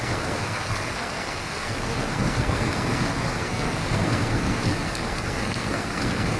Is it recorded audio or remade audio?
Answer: remade